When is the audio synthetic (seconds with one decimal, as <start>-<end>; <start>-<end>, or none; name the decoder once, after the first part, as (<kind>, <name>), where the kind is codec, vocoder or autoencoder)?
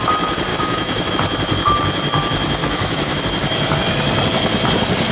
0.5-1.1 (autoencoder, DAC-VAE); 2.6-3.2